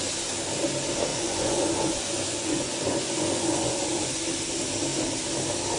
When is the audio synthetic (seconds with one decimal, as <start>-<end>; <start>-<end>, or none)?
1.1-4.2